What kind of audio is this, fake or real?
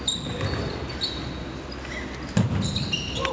real